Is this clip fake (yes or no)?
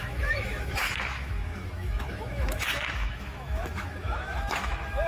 yes